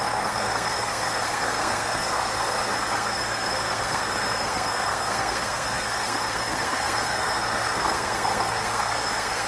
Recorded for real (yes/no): no